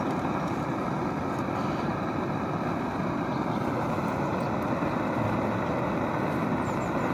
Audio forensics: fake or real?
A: real